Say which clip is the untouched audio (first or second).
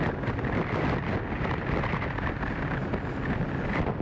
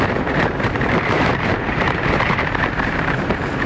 first